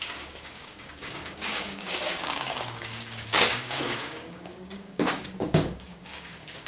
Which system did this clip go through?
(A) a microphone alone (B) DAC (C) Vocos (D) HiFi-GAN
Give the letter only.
B